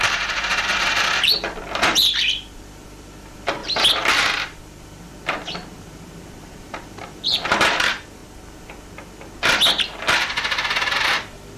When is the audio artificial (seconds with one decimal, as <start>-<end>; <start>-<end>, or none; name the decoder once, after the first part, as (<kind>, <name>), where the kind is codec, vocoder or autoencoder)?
0.0-3.6 (vocoder, BigVGAN v2); 4.1-5.1; 5.7-8.2; 10.0-11.6

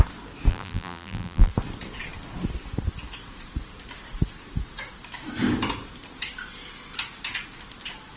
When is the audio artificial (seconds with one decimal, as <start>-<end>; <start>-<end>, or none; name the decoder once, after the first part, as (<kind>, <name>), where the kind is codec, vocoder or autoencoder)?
0.5-1.5 (vocoder, BigVGAN v2)

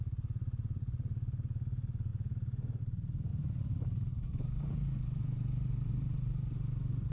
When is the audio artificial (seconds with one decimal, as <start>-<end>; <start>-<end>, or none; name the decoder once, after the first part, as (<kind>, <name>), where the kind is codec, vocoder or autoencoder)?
0.0-7.1 (vocoder, BigVGAN v2)

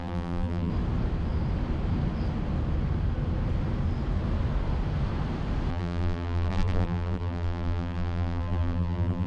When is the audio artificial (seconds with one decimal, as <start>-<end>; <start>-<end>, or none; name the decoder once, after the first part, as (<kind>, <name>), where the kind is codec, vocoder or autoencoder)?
0.0-0.7 (vocoder, BigVGAN v2); 5.7-9.3

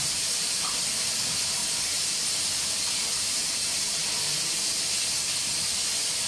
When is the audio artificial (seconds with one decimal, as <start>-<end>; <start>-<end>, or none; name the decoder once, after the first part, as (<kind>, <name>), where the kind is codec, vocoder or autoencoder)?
0.0-1.6 (vocoder, BigVGAN v2); 3.5-4.0

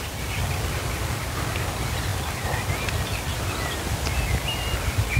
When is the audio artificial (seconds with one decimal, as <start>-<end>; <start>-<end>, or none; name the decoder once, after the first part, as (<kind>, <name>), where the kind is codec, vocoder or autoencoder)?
0.0-2.1 (vocoder, BigVGAN v2); 3.2-5.2